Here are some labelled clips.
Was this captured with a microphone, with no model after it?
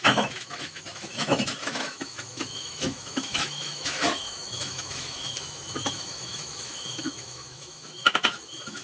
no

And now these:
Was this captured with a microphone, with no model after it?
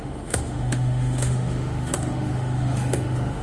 no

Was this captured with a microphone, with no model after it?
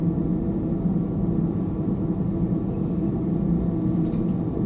yes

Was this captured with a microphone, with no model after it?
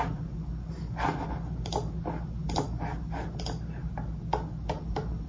yes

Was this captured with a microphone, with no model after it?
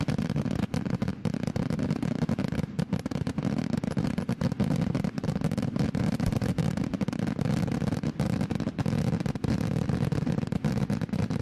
yes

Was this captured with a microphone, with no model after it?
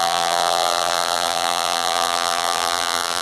no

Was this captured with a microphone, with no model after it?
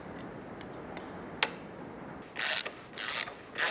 yes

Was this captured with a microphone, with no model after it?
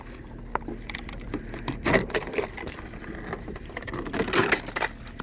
no